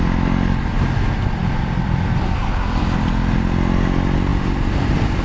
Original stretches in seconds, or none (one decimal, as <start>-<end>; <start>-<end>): 0.0-5.2